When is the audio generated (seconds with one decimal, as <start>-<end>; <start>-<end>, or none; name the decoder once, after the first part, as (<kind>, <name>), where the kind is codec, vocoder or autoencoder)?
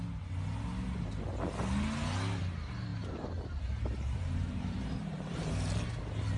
2.9-5.5 (vocoder, BigVGAN v2)